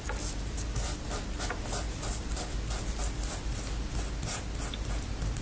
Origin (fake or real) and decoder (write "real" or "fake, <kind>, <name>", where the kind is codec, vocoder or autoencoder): real